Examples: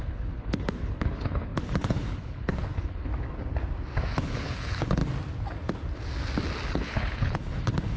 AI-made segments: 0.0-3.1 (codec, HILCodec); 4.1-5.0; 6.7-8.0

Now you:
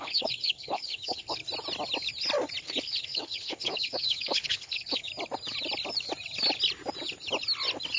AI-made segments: 0.0-1.4 (codec, HILCodec); 2.6-5.1

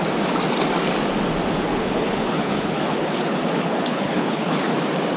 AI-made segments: 1.7-4.8 (codec, HILCodec)

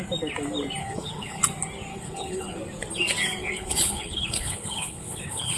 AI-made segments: 0.8-1.4 (codec, HILCodec); 1.9-2.6; 3.4-5.6

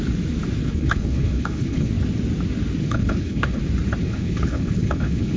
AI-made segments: 0.6-1.9 (codec, HILCodec); 2.8-3.6; 4.0-5.4

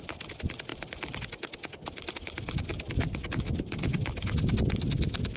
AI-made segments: none

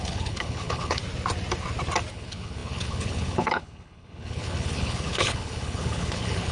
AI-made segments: 0.0-1.0 (codec, HILCodec); 2.1-6.5